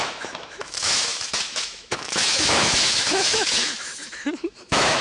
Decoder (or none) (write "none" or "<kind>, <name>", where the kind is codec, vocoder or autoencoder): autoencoder, DAC-VAE